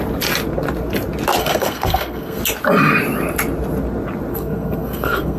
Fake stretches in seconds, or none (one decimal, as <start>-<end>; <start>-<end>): 1.4-2.4; 4.3-5.4